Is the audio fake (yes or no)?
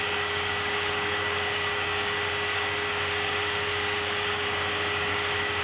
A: yes